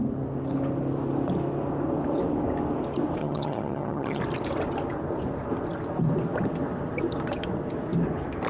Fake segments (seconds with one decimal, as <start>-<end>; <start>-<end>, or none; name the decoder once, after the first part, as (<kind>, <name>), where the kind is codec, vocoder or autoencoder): 3.2-4.2 (vocoder, HiFi-GAN)

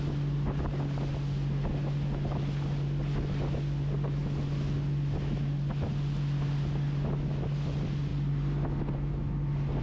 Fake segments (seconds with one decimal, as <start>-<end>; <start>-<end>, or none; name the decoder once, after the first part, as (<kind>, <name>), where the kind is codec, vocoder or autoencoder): none

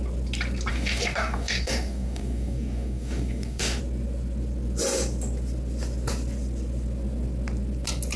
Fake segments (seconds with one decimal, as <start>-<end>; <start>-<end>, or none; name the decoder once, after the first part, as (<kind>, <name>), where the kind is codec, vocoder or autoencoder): 0.7-3.8 (codec, DAC)

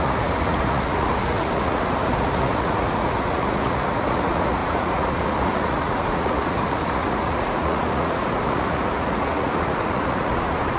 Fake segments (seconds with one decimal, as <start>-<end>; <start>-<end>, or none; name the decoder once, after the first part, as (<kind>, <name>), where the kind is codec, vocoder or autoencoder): 0.0-10.8 (vocoder, Vocos)

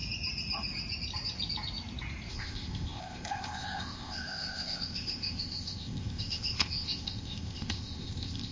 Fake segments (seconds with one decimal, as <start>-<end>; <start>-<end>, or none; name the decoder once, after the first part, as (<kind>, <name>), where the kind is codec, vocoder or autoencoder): 2.3-8.5 (codec, ZipCodec)

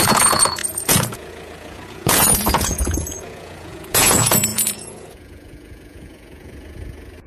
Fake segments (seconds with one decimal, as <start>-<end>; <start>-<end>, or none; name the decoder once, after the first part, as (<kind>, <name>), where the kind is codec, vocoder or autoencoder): 0.0-7.3 (vocoder, Vocos)

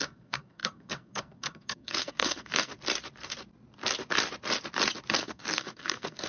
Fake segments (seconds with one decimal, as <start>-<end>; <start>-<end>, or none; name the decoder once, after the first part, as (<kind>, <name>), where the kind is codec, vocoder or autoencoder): 0.0-2.7 (codec, SNAC); 5.1-6.3